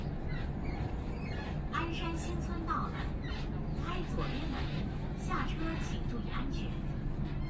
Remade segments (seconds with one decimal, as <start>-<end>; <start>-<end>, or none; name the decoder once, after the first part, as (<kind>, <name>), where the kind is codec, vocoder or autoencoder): 3.7-5.1 (autoencoder, DAC-VAE)